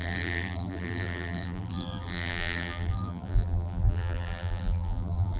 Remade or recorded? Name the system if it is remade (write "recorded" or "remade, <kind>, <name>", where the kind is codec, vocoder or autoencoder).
remade, vocoder, BigVGAN v2